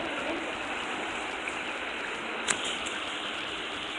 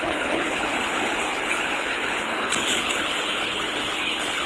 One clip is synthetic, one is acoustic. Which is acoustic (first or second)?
first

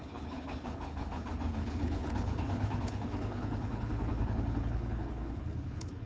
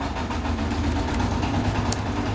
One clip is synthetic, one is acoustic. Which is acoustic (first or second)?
second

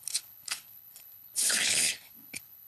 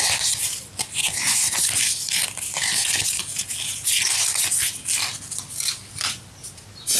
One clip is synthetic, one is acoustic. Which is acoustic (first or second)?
second